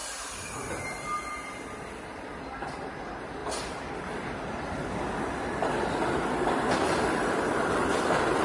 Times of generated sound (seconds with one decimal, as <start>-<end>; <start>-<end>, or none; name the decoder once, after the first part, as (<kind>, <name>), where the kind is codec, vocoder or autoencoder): none